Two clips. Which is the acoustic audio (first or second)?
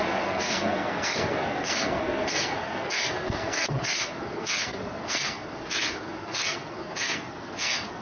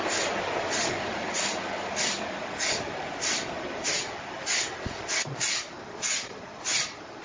second